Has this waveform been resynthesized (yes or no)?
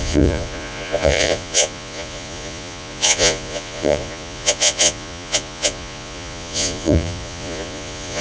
yes